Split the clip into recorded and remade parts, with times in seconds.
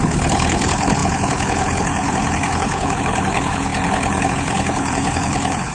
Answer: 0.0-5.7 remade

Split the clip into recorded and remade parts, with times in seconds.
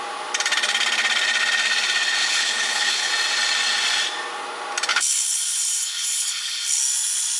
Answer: 0.0-2.2 recorded; 2.2-3.1 remade; 3.1-4.9 recorded; 4.9-6.8 remade; 6.8-7.4 recorded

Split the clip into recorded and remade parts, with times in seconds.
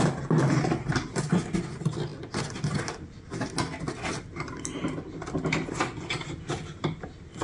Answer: 0.0-7.4 recorded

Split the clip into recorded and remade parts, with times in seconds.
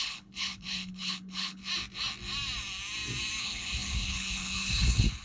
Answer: 0.0-1.6 remade; 1.6-3.4 recorded; 3.4-5.2 remade